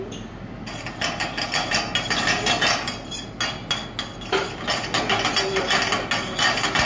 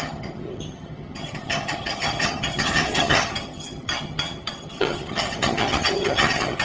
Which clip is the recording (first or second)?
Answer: first